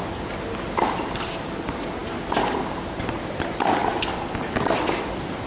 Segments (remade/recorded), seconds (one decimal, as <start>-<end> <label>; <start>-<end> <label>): 0.0-5.5 recorded